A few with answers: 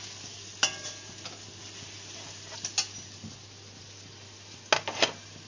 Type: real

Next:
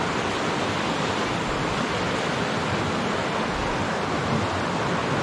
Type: real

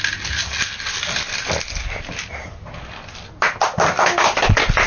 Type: real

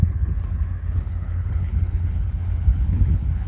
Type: fake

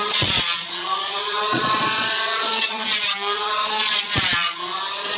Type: fake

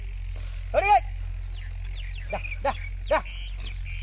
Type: real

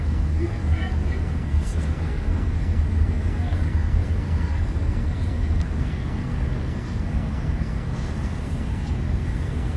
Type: fake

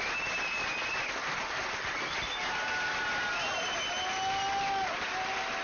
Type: real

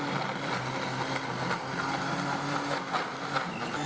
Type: real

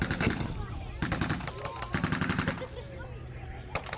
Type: real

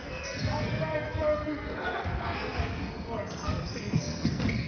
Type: fake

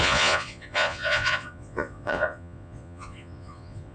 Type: fake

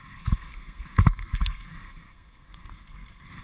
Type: fake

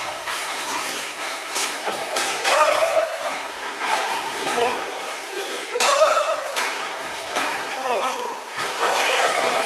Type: fake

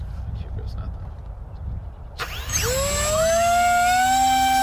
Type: real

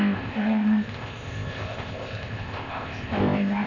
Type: fake